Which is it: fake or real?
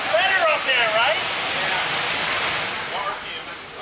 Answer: real